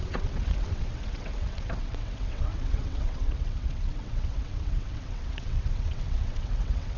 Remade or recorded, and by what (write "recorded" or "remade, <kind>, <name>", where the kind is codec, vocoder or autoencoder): remade, vocoder, WaveNeXt